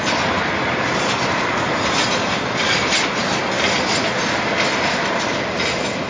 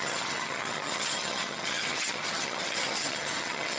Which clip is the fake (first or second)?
second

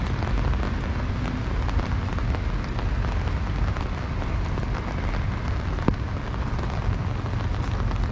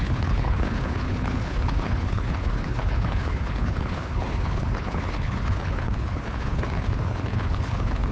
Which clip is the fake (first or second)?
second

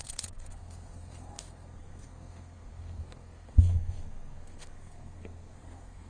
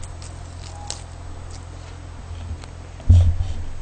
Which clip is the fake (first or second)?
first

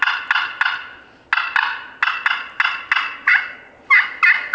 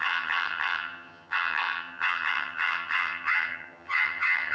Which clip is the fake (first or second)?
second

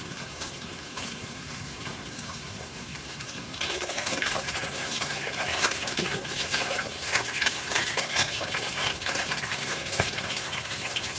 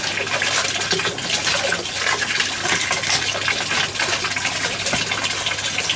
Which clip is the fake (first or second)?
first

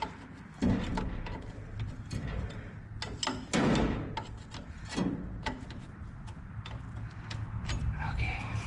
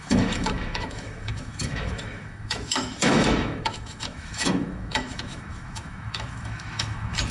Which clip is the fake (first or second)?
second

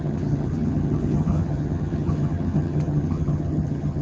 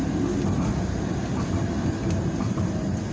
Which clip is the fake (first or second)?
first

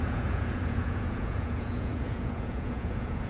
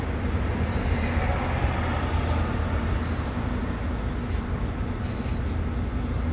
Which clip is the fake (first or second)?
first